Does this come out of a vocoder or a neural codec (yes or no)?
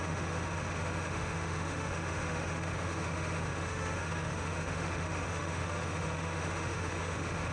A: yes